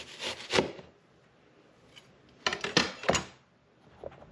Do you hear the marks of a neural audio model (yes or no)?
no